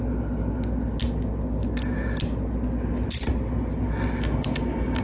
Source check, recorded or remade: recorded